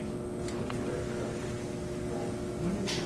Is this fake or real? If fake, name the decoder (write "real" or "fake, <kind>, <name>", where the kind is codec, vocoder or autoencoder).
real